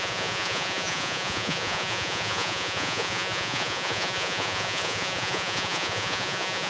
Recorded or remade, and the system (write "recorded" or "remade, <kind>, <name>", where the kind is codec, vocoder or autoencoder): remade, vocoder, Vocos